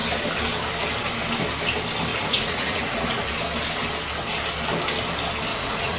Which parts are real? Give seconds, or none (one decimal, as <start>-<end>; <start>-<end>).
0.0-2.1; 3.3-5.5